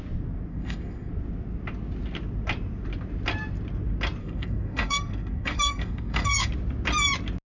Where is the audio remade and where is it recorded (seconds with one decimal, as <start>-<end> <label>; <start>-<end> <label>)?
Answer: 0.0-0.5 recorded; 0.5-1.1 remade; 1.1-4.2 recorded; 4.2-6.5 remade; 6.5-7.5 recorded